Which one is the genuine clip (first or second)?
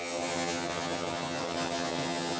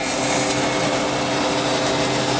second